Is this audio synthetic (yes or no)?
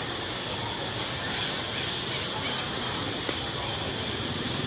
no